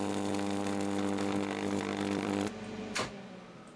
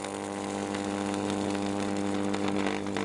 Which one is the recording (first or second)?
second